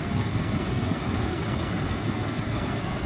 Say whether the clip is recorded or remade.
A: remade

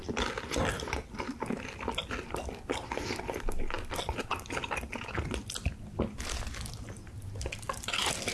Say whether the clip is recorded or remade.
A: recorded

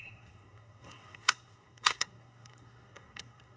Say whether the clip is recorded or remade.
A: remade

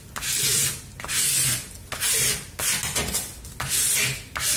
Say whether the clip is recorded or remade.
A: recorded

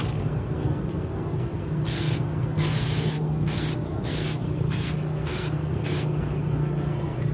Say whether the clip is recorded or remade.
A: remade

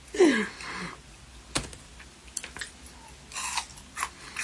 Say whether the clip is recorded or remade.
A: recorded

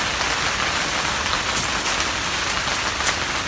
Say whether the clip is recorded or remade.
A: recorded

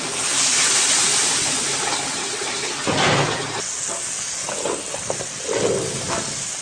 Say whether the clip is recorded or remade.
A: recorded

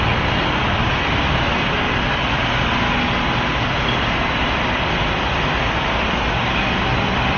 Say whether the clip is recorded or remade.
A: recorded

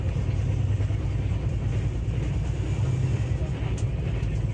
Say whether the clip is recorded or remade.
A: recorded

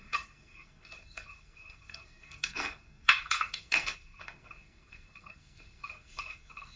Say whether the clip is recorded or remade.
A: remade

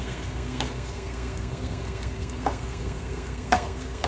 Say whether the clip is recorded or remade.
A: remade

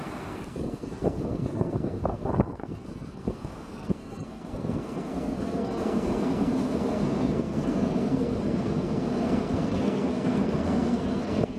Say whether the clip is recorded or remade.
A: remade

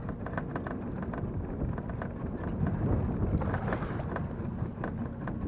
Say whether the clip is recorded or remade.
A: recorded